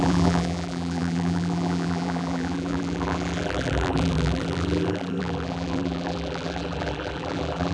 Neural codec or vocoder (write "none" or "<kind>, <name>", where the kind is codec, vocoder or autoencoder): vocoder, BigVGAN v2